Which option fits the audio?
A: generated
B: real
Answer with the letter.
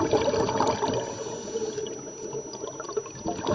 B